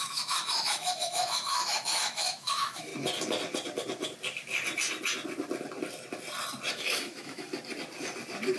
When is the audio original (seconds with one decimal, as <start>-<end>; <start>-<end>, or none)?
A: 2.9-6.7; 7.5-8.6